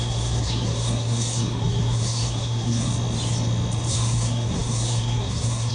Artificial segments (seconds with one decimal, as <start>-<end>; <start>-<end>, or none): 0.0-2.9; 3.9-5.7